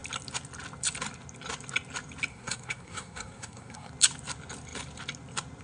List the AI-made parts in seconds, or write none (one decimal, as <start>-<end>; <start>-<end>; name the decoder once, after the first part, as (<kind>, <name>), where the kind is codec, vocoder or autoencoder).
2.3-3.9 (codec, SNAC)